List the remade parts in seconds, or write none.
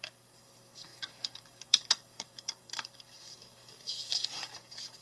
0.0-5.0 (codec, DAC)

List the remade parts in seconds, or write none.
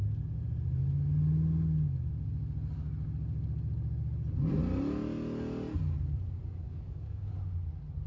6.6-7.3 (codec, DAC)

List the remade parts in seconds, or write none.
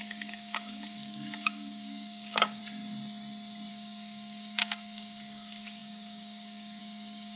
0.0-2.6 (codec, DAC); 3.7-7.4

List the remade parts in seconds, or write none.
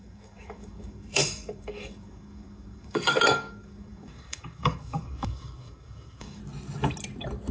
0.0-6.4 (codec, DAC)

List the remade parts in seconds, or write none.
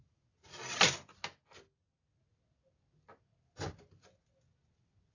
none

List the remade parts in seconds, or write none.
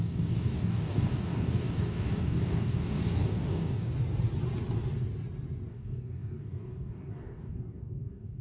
0.0-3.9 (codec, DAC); 5.7-8.4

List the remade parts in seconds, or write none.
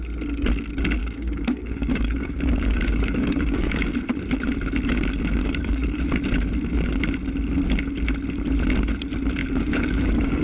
1.0-3.8 (codec, DAC); 5.4-6.0; 9.4-10.4